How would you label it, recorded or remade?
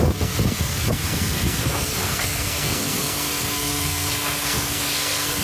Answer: remade